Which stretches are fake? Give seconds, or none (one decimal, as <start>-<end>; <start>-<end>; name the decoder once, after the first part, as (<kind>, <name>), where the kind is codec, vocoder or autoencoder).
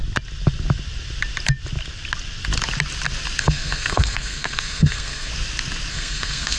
3.4-5.3 (codec, SNAC); 5.9-6.6